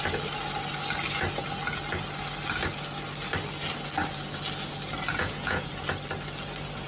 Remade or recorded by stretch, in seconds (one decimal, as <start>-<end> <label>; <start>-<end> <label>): 0.0-5.1 recorded; 5.1-5.7 remade; 5.7-6.9 recorded